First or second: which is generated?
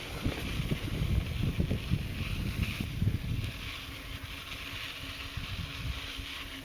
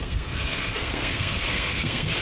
second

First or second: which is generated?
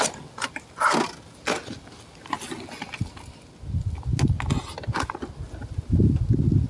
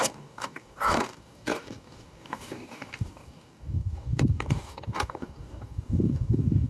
second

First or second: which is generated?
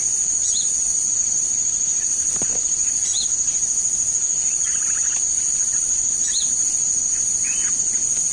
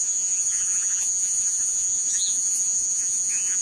second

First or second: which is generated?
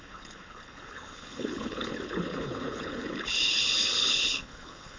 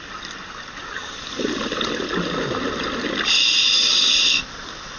first